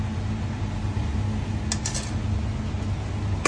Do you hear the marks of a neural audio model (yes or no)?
no